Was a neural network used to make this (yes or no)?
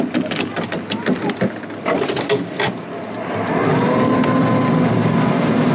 no